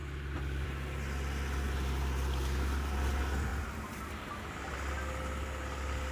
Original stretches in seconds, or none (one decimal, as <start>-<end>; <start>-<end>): 0.0-3.5; 4.2-6.1

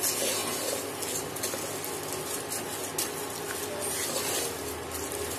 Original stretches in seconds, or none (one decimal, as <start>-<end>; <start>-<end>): 0.0-5.4

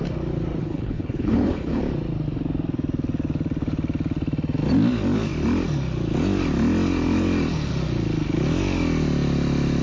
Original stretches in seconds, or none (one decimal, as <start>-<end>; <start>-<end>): 0.0-0.6; 1.8-9.8

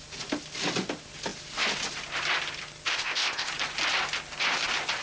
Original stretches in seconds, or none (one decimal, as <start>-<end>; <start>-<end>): 0.0-2.9; 3.5-5.0

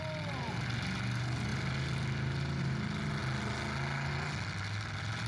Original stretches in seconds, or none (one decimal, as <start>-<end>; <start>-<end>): 0.0-5.3

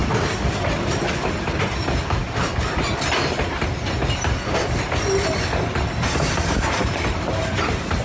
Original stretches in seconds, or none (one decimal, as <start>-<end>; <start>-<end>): 0.0-8.0

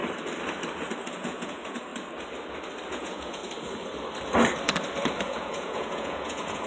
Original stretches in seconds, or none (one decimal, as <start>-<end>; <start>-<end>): 0.0-1.1; 1.9-2.9; 3.4-5.2

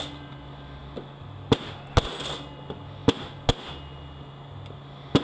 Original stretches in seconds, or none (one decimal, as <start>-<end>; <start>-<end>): 0.0-5.2